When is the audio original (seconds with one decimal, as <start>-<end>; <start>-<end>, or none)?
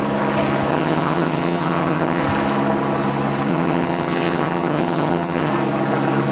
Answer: 0.0-0.7; 2.2-3.5; 5.5-6.3